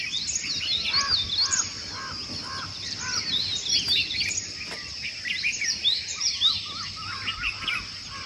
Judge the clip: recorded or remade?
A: recorded